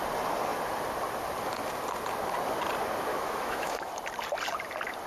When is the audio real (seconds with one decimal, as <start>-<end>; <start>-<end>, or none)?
0.0-3.1; 3.9-5.1